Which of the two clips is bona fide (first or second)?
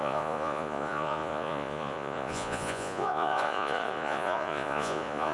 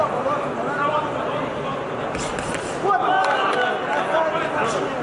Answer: second